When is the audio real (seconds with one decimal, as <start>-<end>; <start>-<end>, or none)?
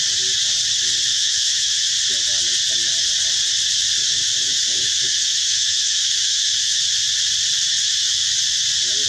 0.0-1.1; 1.9-4.0; 6.8-7.8; 8.3-9.1